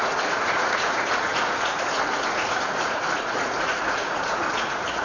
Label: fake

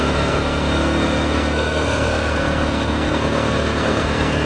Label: fake